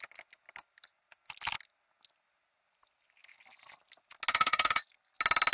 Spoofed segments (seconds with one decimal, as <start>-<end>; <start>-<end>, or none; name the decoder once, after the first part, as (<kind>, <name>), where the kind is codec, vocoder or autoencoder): 4.3-4.8 (codec, SNAC)